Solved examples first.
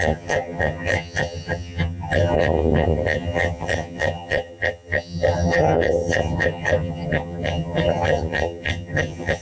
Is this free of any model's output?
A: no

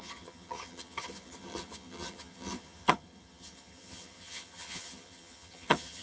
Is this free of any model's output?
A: no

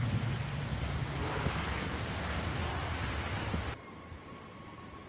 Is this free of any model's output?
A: yes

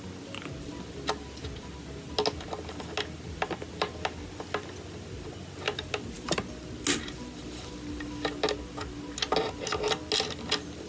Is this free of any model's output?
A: yes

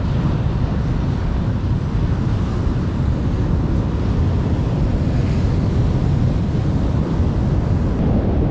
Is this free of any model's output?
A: yes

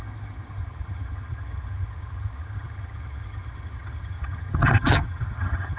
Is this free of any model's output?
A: no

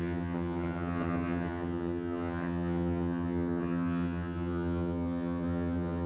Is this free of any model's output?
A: no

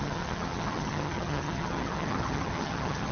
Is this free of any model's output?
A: no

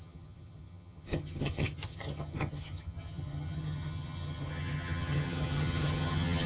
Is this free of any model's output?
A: no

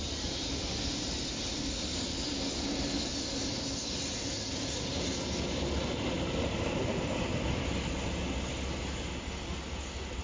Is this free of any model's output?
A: yes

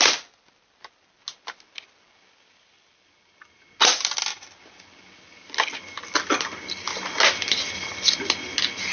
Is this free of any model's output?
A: yes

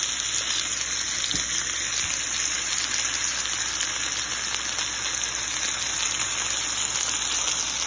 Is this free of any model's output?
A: yes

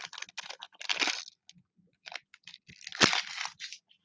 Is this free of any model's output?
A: yes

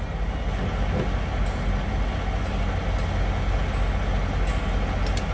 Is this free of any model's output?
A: yes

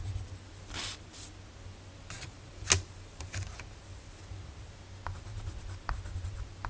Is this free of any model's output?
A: yes